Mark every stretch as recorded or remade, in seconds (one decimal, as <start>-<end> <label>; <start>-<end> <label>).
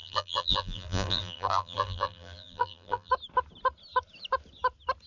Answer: 0.0-3.1 remade; 3.1-5.1 recorded